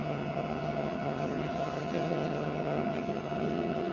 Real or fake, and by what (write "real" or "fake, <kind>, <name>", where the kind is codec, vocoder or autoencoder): fake, vocoder, HiFi-GAN